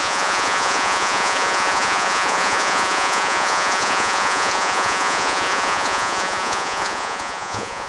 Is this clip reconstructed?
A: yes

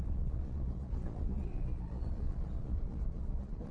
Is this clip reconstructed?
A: yes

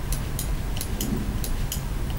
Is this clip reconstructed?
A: no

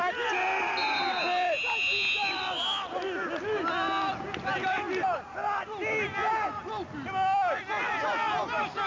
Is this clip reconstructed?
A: no